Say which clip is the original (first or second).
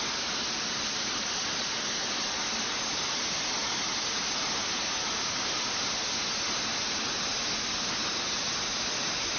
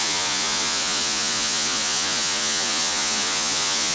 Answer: first